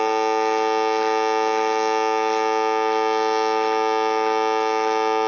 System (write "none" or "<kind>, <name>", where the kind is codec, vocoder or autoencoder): none